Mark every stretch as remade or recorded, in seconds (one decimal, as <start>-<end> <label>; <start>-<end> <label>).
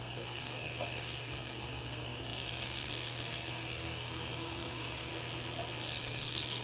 0.0-5.1 remade; 5.1-6.0 recorded; 6.0-6.6 remade